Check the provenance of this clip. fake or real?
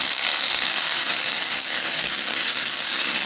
fake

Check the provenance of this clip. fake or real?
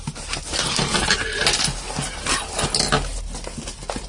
real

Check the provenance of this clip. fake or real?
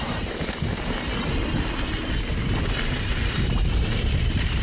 real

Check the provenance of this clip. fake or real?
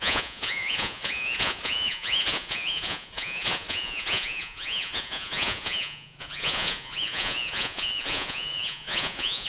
fake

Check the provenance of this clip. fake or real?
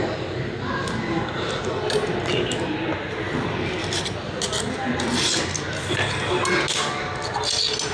real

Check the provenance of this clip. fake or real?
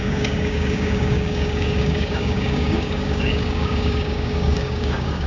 fake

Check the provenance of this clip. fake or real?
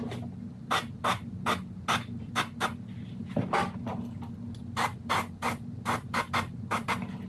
real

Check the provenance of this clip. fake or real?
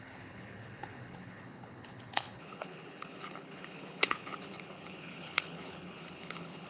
fake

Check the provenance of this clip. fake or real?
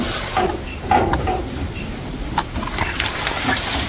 real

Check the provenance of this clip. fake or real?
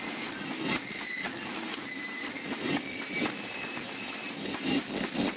fake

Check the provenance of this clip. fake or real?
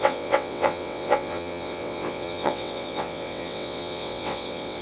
fake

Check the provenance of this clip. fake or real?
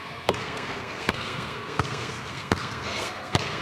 fake